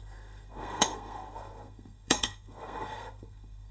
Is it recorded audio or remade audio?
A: remade